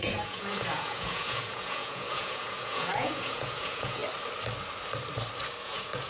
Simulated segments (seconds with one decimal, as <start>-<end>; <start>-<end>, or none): 0.0-4.0; 5.6-6.1